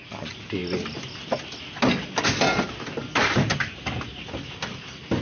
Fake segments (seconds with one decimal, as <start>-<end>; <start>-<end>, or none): none